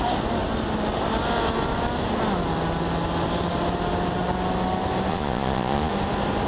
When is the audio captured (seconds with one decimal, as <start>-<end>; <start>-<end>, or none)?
0.0-5.1; 5.9-6.5